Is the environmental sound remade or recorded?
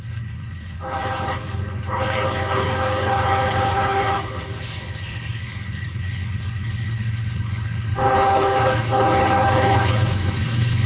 remade